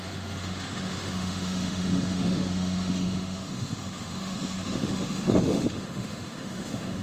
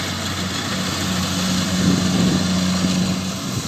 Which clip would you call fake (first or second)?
first